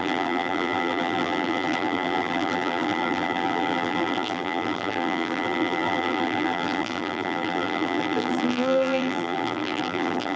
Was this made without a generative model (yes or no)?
no